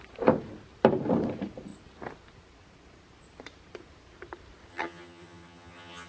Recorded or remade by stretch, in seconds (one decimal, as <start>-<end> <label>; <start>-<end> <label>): 0.0-4.7 recorded; 4.7-6.1 remade